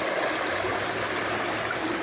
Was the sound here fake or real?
real